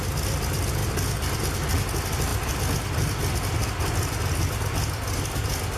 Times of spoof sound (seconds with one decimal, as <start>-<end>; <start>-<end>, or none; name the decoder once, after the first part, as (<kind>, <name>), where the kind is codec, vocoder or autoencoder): none